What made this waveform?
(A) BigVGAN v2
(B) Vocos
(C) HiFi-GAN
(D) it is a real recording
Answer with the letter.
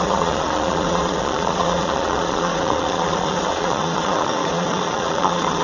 B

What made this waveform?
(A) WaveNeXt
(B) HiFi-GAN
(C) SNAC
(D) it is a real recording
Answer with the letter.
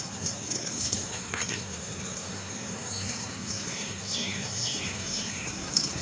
C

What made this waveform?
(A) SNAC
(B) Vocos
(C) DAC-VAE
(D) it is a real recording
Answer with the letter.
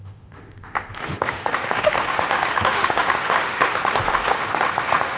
C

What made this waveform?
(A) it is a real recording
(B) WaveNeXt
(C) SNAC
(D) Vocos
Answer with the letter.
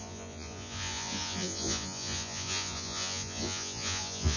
D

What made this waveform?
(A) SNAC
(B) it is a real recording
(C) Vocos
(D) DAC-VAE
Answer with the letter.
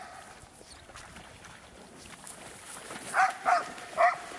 B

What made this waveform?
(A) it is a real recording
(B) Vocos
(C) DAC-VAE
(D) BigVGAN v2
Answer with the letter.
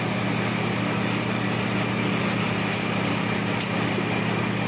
A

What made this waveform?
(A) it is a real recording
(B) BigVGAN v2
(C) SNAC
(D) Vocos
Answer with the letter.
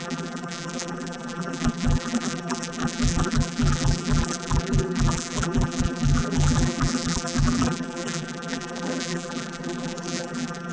B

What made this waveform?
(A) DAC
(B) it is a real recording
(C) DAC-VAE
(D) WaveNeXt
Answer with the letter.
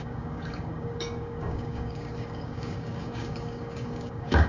A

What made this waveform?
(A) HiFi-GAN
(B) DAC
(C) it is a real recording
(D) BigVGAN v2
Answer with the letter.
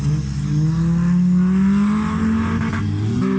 C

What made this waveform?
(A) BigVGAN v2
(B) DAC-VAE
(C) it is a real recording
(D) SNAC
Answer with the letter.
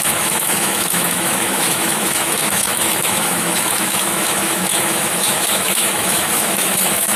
B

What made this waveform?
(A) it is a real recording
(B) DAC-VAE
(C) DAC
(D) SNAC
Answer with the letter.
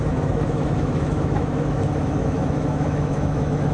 B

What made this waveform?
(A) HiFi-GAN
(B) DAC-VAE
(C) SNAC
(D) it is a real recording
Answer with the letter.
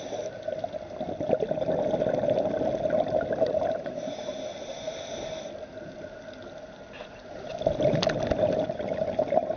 D